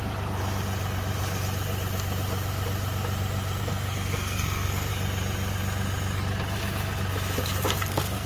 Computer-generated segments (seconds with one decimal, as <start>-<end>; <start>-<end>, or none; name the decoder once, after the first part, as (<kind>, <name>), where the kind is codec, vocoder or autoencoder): 3.6-4.9 (codec, SNAC); 7.9-8.3